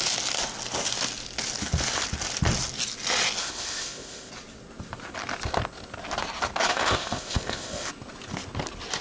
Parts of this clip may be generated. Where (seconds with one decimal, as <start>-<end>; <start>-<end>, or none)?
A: 3.4-4.3; 6.7-7.9